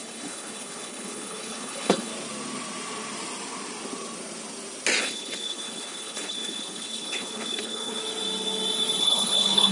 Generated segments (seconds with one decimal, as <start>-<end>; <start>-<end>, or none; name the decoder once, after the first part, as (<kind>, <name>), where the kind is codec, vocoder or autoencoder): 0.0-2.1 (codec, HILCodec); 5.0-8.0; 9.0-9.7